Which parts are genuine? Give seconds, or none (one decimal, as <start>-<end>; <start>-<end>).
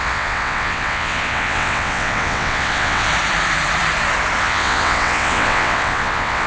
3.1-4.4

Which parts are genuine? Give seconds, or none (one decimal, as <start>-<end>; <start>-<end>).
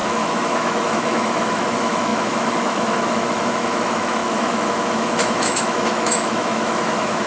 none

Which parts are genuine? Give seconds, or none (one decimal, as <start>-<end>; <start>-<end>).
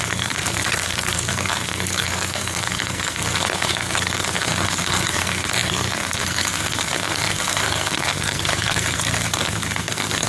none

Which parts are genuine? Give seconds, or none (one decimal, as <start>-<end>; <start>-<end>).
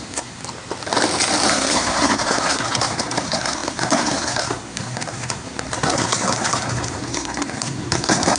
0.4-1.5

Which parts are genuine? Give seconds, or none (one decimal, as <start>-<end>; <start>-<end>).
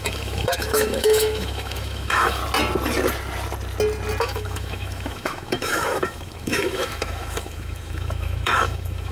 2.4-4.2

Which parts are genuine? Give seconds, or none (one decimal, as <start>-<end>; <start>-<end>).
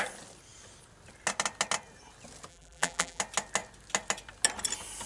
0.0-2.5; 3.2-5.1